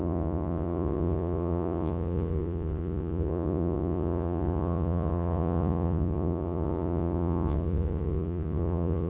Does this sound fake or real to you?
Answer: fake